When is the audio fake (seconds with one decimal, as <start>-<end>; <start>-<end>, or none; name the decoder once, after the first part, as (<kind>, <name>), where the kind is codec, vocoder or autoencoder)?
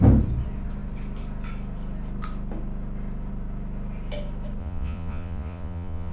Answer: 4.6-6.1 (vocoder, Vocos)